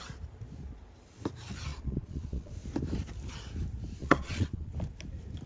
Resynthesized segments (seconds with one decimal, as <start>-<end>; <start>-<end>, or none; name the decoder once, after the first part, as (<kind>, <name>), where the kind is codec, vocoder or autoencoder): 1.7-2.5 (vocoder, Vocos); 4.0-4.7

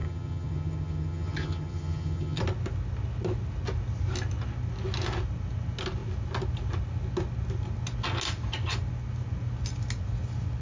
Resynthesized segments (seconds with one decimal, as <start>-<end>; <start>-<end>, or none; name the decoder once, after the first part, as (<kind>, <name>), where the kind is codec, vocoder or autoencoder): 0.0-2.4 (vocoder, HiFi-GAN)

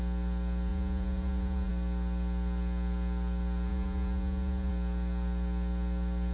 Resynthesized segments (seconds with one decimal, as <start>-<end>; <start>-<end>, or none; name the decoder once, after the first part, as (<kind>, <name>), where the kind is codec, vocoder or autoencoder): 0.7-1.7 (vocoder, Vocos); 3.7-4.7

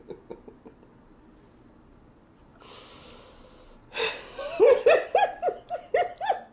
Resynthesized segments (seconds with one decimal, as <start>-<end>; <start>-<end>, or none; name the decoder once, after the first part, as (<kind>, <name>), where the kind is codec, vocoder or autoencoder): none

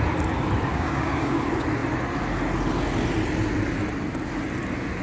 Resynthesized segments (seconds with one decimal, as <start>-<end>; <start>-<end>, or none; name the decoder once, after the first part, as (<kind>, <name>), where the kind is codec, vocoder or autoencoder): 0.7-1.4 (codec, DAC)